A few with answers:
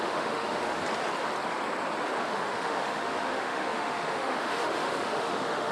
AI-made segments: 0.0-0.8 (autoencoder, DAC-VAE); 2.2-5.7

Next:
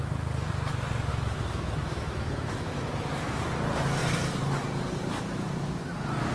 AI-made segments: 1.1-3.5 (autoencoder, DAC-VAE)